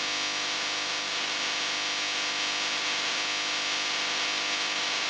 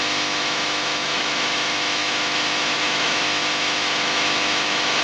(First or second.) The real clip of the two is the first